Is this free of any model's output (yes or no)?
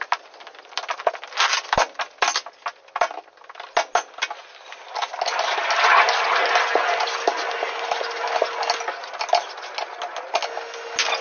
yes